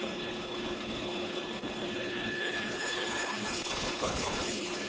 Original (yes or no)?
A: no